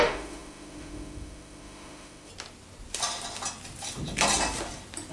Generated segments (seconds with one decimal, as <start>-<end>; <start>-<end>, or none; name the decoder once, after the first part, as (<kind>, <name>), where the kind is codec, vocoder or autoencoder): 0.0-2.3 (autoencoder, DAC-VAE)